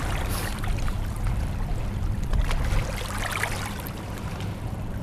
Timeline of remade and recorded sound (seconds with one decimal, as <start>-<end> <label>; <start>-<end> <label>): 0.0-5.0 recorded